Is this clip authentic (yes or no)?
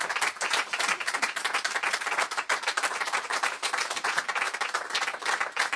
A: no